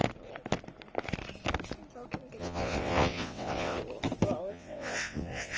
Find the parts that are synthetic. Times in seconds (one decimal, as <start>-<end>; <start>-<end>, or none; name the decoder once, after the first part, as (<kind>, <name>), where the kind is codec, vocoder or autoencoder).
2.4-3.8 (vocoder, WaveNeXt); 4.5-5.6